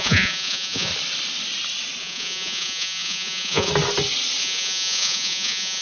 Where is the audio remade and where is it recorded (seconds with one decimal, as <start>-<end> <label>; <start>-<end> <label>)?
0.0-0.9 remade; 0.9-2.0 recorded; 2.0-3.7 remade; 3.7-4.4 recorded; 4.4-5.8 remade